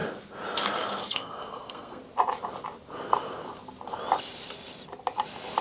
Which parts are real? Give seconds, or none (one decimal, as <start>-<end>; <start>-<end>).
0.0-1.1; 2.0-5.6